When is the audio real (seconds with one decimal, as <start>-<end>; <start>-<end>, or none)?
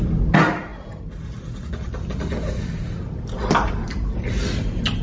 0.0-5.0